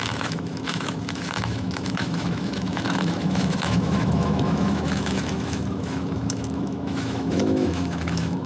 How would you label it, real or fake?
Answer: fake